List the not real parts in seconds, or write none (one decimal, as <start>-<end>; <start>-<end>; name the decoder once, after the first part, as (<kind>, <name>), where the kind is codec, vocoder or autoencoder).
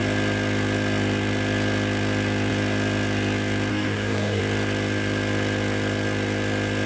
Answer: 3.7-4.4 (codec, DAC)